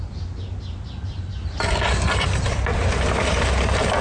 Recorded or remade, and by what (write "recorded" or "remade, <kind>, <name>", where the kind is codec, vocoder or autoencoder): recorded